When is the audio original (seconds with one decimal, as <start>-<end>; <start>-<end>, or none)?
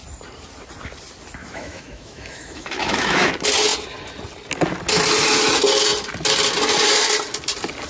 0.0-1.4; 3.3-7.9